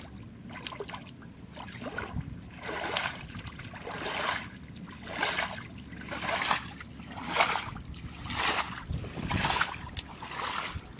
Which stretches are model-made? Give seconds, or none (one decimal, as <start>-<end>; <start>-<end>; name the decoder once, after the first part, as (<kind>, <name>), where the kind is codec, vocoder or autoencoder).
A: 3.0-3.6 (vocoder, BigVGAN v2)